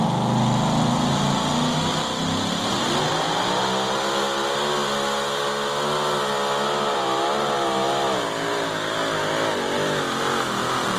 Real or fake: real